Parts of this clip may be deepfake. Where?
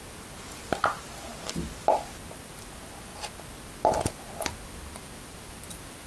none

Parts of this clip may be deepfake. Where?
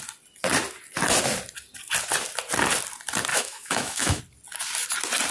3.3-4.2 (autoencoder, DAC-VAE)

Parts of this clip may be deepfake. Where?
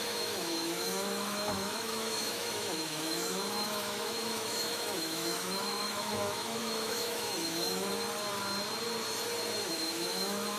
0.0-7.9 (autoencoder, DAC-VAE); 9.7-10.6